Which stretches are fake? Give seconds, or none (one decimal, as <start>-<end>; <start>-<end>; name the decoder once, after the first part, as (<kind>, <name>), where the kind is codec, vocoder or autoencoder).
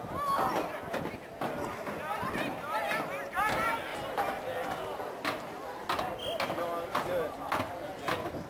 3.9-4.4 (vocoder, BigVGAN v2)